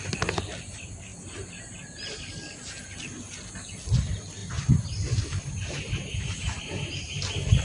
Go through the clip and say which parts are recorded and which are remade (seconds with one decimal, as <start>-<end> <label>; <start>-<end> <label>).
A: 0.0-4.4 recorded; 4.4-6.9 remade; 6.9-7.6 recorded